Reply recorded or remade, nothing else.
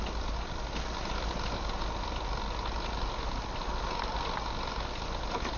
recorded